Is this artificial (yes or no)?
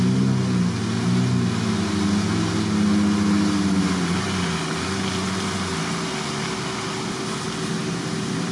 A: no